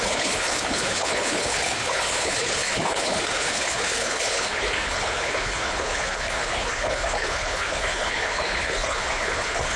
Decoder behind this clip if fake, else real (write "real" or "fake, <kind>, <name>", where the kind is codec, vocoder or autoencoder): fake, codec, HILCodec